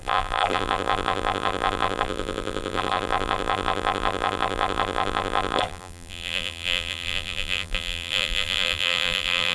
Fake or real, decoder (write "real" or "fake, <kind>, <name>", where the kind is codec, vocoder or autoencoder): fake, vocoder, BigVGAN v2